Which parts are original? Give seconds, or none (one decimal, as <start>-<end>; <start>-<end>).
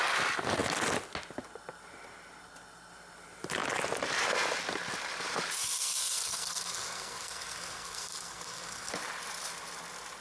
0.0-5.6; 8.9-10.2